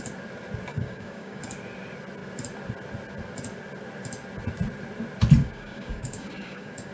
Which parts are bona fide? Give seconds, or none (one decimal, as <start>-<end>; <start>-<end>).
0.0-0.7; 1.4-5.4